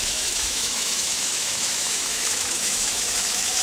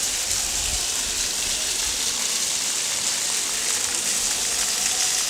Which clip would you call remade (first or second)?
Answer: first